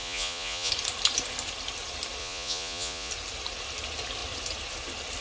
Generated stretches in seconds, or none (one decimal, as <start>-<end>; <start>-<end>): 0.0-0.7; 2.2-3.1